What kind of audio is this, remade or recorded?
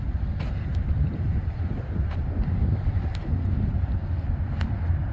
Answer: recorded